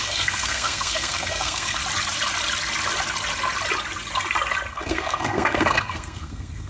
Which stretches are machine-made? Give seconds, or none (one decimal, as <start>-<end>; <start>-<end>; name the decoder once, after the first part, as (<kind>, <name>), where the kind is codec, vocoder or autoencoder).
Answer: 0.0-1.8 (codec, SNAC); 4.7-6.7